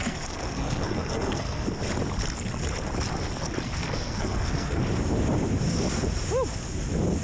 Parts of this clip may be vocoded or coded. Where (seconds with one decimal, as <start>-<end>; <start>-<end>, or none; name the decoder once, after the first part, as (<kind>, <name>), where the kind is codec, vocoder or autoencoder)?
0.0-1.8 (codec, SNAC); 3.6-4.8